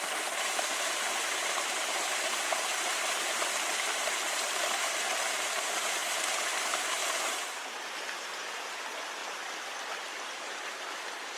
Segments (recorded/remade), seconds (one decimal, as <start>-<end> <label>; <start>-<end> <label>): 0.0-9.2 remade; 9.2-10.1 recorded; 10.1-11.4 remade